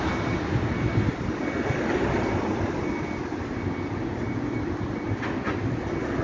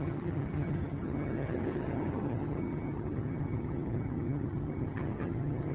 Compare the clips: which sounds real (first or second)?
first